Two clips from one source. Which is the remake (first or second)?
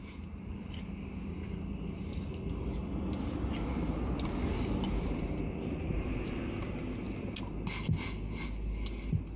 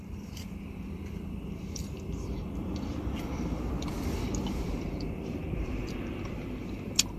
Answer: second